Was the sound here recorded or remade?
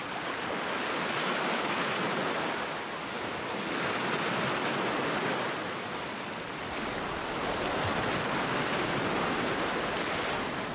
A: recorded